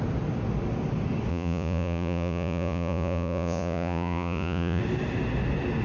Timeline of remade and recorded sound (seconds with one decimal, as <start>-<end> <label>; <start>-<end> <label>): 0.0-1.3 recorded; 1.3-4.8 remade; 4.8-5.8 recorded